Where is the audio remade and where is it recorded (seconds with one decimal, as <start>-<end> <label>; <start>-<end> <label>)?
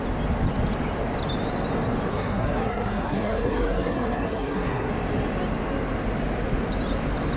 0.0-2.1 recorded; 2.1-4.9 remade; 4.9-7.4 recorded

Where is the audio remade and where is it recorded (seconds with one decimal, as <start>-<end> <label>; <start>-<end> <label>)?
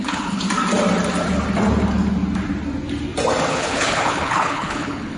0.0-0.4 remade; 0.4-3.5 recorded; 3.5-5.2 remade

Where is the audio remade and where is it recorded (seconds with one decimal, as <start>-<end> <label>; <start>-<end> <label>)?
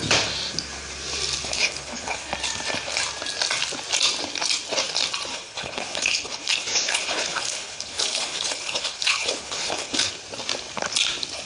0.0-1.4 recorded; 1.4-2.3 remade; 2.3-5.3 recorded; 5.3-10.1 remade; 10.1-11.5 recorded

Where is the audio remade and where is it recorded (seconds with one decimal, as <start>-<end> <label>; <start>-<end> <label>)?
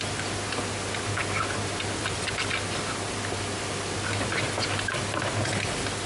0.0-6.1 recorded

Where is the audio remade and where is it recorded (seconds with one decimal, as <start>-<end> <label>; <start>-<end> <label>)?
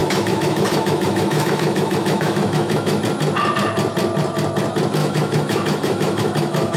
0.0-3.0 remade; 3.0-5.0 recorded; 5.0-6.8 remade